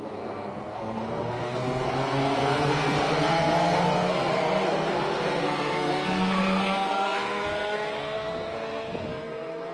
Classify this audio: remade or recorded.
remade